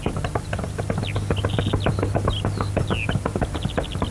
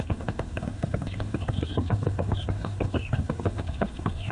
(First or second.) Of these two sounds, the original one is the first